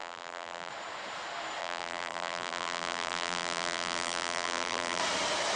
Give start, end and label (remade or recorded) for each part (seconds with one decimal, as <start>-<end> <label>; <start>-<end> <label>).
0.0-0.7 remade; 0.7-1.6 recorded; 1.6-5.0 remade; 5.0-5.6 recorded

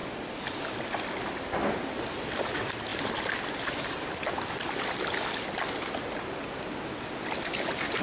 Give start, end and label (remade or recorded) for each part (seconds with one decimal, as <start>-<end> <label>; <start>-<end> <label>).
0.0-8.0 recorded

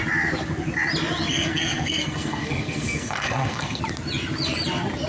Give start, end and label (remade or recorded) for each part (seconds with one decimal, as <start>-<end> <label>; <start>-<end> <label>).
0.0-1.3 recorded; 1.3-3.8 remade; 3.8-5.1 recorded

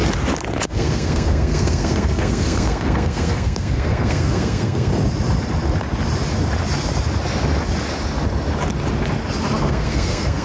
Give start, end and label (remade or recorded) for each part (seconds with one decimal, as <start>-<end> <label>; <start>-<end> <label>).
0.0-0.7 recorded; 0.7-4.9 remade; 4.9-9.6 recorded; 9.6-10.4 remade